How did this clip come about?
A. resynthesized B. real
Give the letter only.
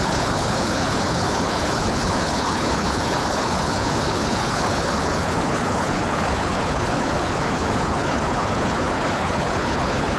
A